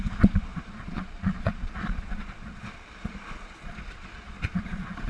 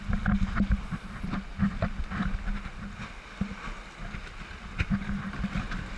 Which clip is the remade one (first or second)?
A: first